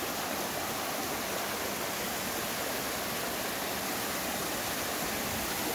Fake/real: real